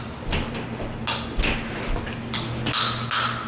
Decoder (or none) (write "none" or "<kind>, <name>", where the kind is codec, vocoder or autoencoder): none